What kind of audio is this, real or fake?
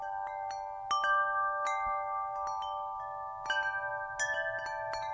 real